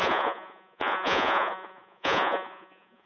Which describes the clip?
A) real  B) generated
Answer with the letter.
B